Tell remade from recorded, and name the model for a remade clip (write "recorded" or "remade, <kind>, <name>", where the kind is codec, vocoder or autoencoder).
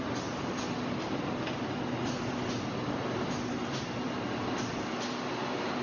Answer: recorded